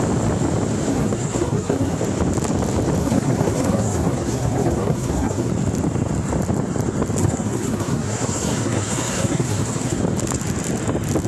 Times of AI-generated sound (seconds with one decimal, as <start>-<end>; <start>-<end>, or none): 0.9-2.0; 3.0-5.5; 7.2-10.0